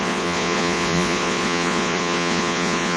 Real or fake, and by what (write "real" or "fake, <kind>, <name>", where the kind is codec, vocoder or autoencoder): fake, vocoder, Vocos